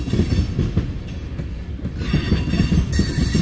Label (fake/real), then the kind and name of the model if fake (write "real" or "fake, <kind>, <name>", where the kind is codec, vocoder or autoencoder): real